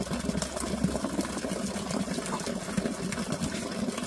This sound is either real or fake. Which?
real